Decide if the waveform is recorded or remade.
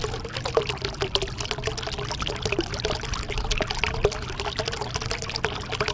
recorded